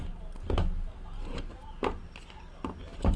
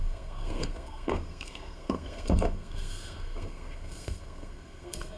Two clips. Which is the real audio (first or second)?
first